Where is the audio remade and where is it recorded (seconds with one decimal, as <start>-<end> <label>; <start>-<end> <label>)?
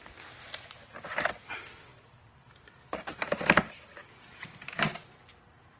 0.0-1.9 recorded; 1.9-4.7 remade; 4.7-5.8 recorded